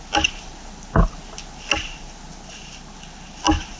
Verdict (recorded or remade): recorded